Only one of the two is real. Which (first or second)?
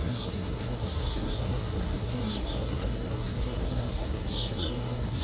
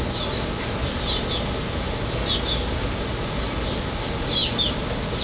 second